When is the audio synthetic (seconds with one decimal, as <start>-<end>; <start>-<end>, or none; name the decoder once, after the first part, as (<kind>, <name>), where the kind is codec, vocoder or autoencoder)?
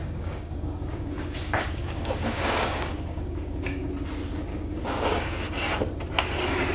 0.0-3.9 (codec, DAC); 4.5-5.4